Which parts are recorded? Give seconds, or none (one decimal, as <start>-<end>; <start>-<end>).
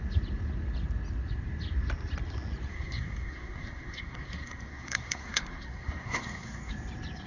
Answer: 0.0-2.7; 6.7-7.3